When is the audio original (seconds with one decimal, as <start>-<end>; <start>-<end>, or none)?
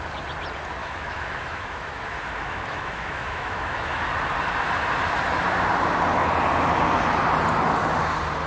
0.0-0.8; 4.0-8.5